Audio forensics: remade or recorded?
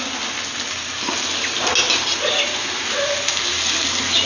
recorded